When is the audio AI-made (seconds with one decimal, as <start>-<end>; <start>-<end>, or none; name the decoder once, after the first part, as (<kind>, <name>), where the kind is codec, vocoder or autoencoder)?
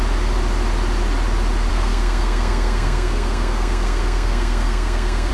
1.7-5.3 (codec, SNAC)